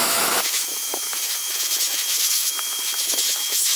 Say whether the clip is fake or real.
fake